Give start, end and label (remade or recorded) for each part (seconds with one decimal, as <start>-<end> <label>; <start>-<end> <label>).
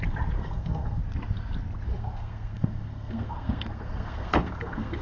0.0-0.4 recorded; 0.4-1.0 remade; 1.0-1.9 recorded; 1.9-5.0 remade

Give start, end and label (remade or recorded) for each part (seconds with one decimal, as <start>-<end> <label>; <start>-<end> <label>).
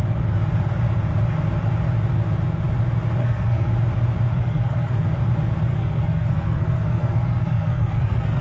0.0-3.2 recorded; 3.2-3.7 remade; 3.7-4.3 recorded; 4.3-5.0 remade; 5.0-5.7 recorded; 5.7-8.4 remade